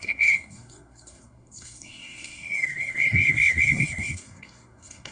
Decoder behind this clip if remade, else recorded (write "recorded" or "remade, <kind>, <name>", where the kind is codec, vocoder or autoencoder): remade, codec, SNAC